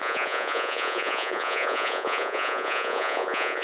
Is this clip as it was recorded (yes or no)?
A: no